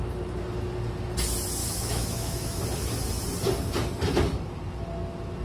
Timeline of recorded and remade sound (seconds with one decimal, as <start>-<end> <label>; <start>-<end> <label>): 0.0-1.6 recorded; 1.6-2.6 remade; 2.6-5.4 recorded